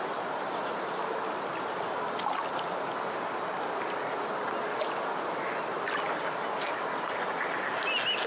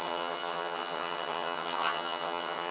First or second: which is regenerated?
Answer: second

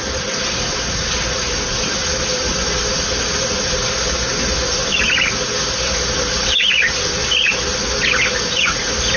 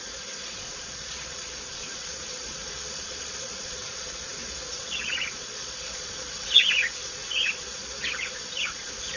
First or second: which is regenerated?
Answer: second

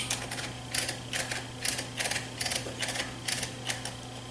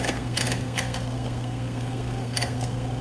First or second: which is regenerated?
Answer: second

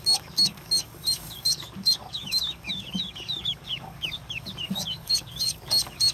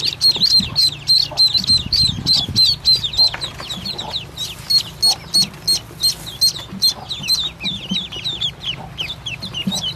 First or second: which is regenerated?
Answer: first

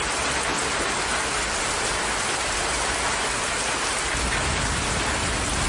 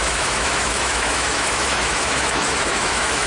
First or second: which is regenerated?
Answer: second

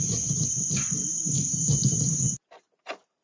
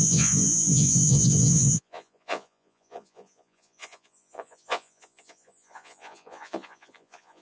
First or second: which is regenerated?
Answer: second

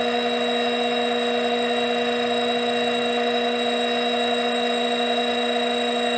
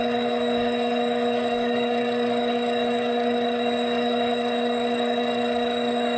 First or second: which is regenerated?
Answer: second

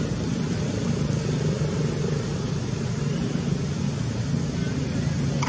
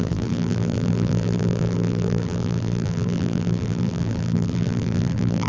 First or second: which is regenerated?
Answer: second